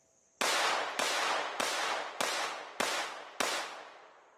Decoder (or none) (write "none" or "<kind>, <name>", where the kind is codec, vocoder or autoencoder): none